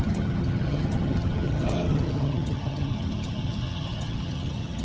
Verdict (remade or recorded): remade